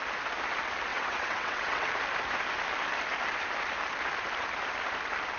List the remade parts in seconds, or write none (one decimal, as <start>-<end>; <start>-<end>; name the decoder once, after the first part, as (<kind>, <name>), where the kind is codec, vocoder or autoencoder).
0.9-1.9 (vocoder, WaveNeXt)